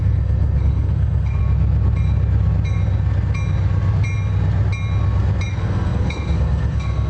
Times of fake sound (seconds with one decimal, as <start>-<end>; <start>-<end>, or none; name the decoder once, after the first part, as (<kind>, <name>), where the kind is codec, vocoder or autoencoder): 0.0-1.4 (codec, SNAC); 5.5-7.1